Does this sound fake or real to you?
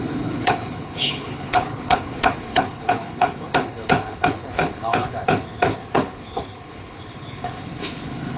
fake